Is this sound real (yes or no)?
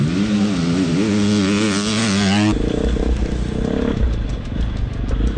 yes